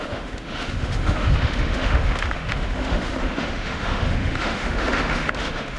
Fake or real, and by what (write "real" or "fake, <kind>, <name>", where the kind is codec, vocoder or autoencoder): fake, autoencoder, DAC-VAE